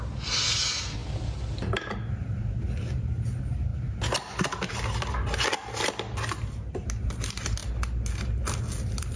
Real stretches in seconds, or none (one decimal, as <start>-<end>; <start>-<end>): 0.0-9.2